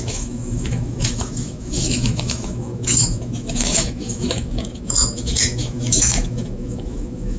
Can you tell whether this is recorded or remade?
remade